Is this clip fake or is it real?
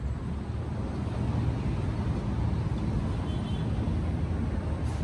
real